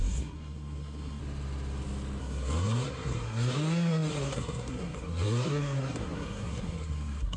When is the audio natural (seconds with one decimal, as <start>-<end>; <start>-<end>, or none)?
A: 1.2-2.2